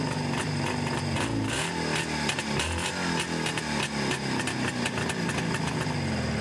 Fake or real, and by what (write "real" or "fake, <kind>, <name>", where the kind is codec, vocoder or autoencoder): real